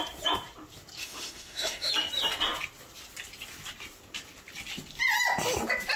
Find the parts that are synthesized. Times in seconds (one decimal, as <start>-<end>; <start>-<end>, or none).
1.0-1.9

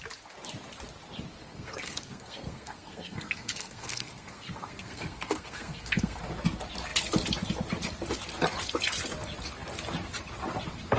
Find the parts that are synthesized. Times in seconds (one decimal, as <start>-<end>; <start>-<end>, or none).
1.4-6.2

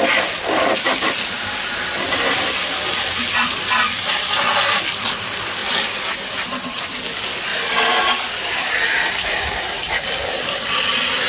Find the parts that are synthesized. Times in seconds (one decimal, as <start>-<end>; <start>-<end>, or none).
none

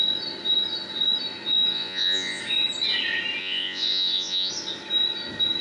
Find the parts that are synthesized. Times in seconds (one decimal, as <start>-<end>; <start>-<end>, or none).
1.7-2.4; 3.4-4.5